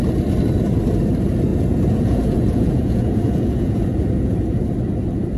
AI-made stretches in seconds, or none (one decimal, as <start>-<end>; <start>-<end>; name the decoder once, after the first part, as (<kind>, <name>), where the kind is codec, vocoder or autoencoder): 1.5-4.7 (vocoder, Vocos)

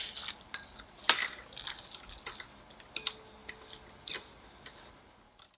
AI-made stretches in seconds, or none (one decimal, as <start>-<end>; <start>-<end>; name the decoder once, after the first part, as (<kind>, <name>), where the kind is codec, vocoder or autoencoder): none

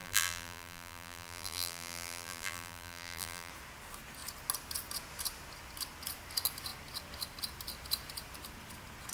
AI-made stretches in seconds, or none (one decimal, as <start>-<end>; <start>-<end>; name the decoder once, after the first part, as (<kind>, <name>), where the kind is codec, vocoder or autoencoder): 0.0-3.5 (vocoder, BigVGAN v2)